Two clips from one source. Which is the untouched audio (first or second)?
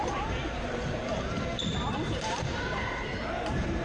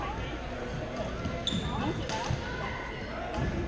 second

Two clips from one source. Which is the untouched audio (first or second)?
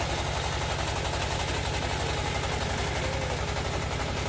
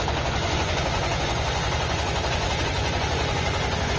first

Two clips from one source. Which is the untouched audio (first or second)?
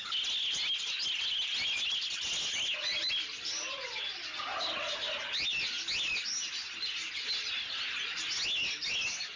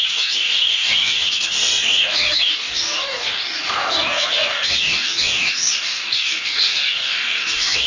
first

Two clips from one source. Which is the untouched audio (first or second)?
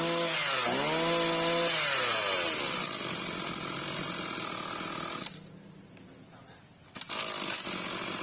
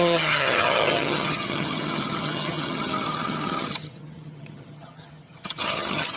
first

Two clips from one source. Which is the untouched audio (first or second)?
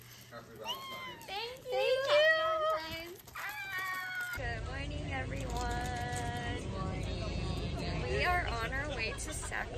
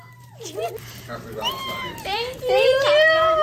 first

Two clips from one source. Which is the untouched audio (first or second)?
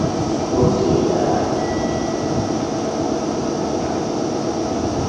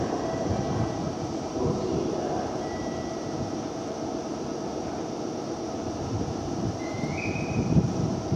first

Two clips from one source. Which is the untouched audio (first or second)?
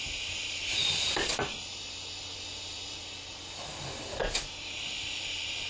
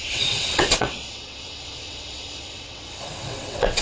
first